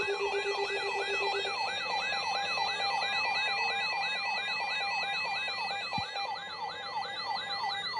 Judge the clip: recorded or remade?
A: recorded